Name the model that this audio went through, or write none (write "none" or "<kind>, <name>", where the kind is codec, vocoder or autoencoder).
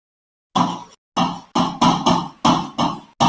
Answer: none